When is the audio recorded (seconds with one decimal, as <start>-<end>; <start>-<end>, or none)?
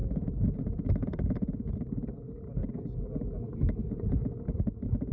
0.6-1.0; 1.7-3.8